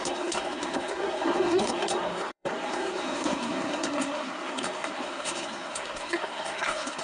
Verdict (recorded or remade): remade